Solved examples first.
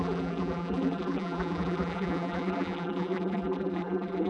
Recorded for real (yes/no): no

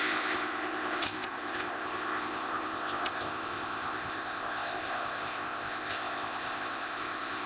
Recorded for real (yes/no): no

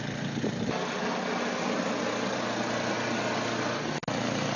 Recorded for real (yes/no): yes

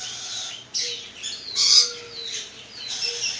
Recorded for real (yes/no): yes